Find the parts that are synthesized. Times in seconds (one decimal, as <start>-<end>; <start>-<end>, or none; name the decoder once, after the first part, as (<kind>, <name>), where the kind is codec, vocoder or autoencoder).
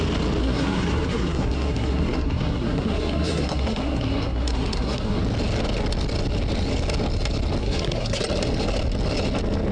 0.4-5.2 (codec, SNAC); 7.6-8.2